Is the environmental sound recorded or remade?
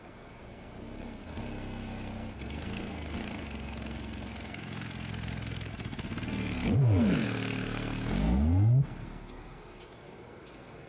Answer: remade